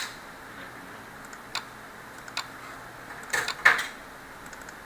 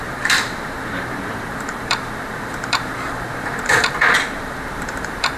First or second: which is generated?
second